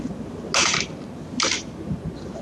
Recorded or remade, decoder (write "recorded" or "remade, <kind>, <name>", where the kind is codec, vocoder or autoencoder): recorded